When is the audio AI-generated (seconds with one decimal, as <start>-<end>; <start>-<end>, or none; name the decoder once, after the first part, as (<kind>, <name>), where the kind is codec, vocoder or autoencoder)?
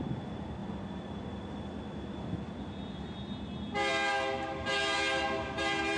none